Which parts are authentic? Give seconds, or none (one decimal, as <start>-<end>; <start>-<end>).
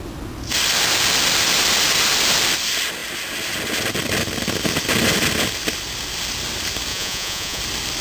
0.0-6.9; 7.6-8.0